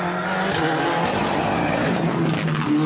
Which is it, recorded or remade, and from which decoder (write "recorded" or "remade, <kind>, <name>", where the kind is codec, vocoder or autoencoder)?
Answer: recorded